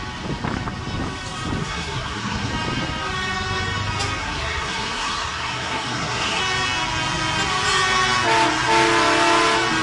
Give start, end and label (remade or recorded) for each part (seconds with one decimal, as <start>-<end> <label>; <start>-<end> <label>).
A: 0.0-1.6 recorded; 1.6-2.5 remade; 2.5-4.2 recorded; 4.2-6.4 remade; 6.4-9.8 recorded